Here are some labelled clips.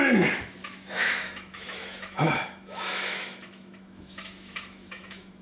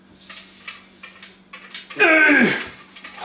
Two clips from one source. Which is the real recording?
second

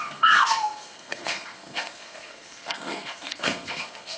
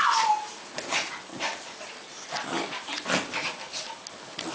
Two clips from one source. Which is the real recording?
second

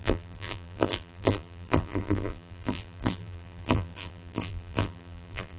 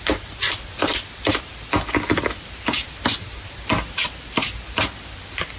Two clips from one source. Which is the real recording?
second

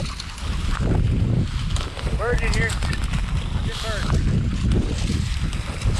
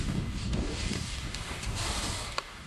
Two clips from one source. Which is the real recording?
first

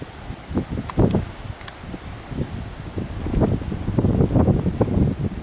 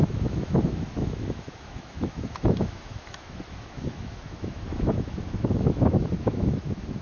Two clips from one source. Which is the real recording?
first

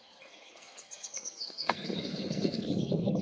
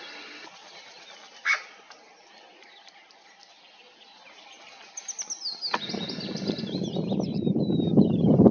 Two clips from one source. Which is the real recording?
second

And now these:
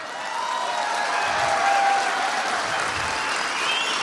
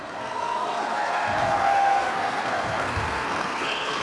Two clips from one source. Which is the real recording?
first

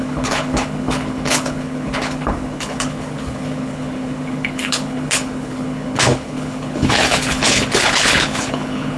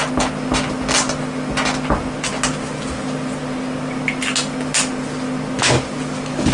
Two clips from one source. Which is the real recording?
second